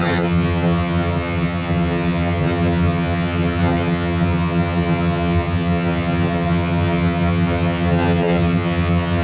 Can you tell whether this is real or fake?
fake